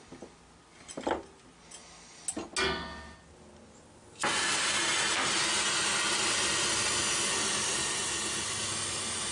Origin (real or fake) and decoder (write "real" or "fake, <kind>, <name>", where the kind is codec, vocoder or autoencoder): real